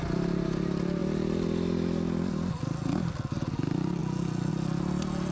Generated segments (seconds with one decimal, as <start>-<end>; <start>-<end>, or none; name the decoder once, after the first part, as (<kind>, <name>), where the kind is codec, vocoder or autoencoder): none